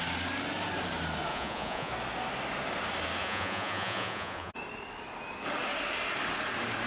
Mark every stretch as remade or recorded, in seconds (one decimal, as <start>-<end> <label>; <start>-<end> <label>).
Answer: 0.0-1.3 recorded; 1.3-1.9 remade; 1.9-3.2 recorded; 3.2-4.5 remade; 4.5-6.9 recorded